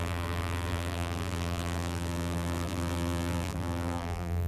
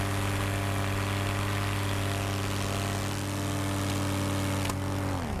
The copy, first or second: first